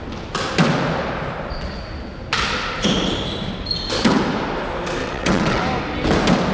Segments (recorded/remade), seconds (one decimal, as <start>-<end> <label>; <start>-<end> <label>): 0.0-5.0 recorded; 5.0-5.6 remade; 5.6-6.5 recorded